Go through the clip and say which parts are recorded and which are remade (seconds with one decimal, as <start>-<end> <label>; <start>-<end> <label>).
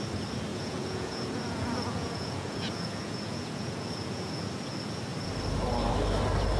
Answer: 0.0-0.5 recorded; 0.5-4.5 remade; 4.5-6.6 recorded